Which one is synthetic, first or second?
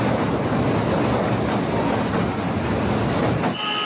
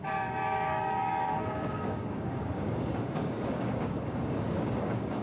second